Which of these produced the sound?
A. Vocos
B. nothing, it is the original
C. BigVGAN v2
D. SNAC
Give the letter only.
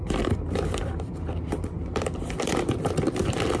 C